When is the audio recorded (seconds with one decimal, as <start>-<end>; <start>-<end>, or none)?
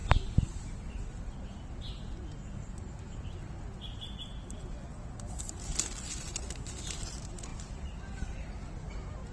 0.0-9.3